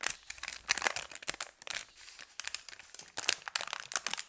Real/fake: real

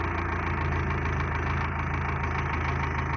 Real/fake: real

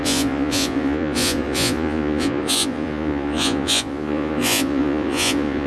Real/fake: fake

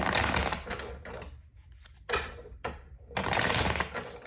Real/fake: real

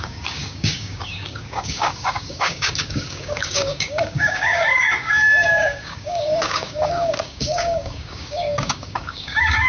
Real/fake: fake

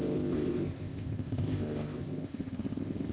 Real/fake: fake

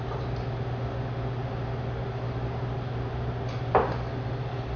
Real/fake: real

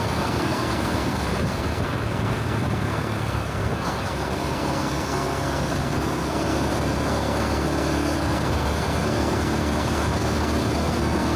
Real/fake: fake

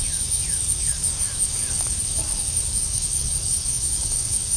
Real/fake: fake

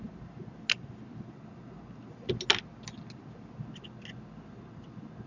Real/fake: real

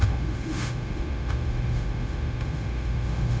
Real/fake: fake